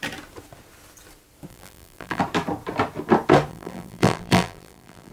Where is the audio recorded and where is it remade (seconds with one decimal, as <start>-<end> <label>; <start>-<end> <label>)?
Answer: 0.0-1.5 recorded; 1.5-2.2 remade; 2.2-3.5 recorded; 3.5-5.1 remade